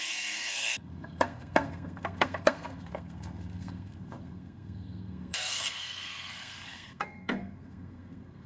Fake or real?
fake